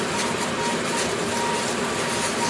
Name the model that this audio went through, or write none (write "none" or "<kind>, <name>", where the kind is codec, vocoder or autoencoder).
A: none